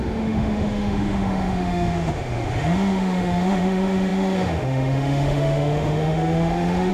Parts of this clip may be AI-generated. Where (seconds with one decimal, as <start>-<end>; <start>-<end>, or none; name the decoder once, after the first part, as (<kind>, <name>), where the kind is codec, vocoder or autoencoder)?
0.0-6.9 (autoencoder, DAC-VAE)